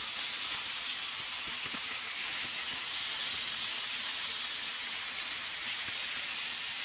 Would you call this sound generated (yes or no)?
no